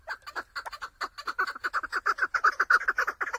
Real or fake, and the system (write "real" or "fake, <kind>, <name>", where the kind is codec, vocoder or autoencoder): real